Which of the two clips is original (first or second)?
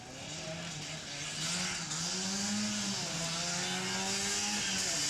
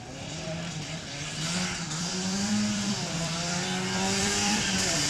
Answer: first